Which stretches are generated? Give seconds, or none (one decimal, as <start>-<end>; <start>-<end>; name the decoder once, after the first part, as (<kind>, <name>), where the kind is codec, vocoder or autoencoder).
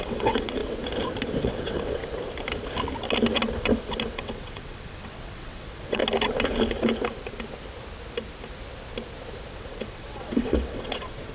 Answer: 0.0-0.6 (vocoder, WaveNeXt); 1.4-2.0; 4.1-6.0; 9.5-11.3